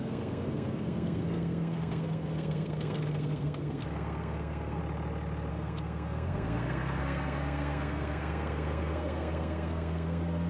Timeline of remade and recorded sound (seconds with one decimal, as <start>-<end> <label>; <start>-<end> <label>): 0.0-4.8 remade; 4.8-5.5 recorded; 5.5-10.5 remade